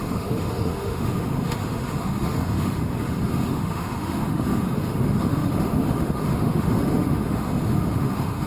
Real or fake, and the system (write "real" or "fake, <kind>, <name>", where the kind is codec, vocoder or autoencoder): fake, autoencoder, DAC-VAE